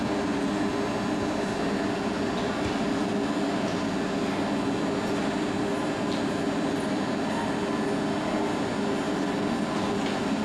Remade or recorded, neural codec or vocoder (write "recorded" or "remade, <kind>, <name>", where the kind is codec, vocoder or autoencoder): recorded